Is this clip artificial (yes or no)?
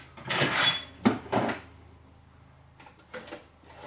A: no